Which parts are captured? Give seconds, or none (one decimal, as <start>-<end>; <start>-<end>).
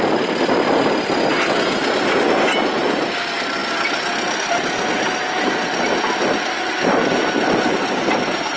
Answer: 0.0-8.6